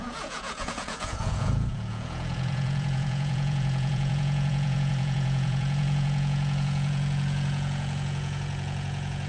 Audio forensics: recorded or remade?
remade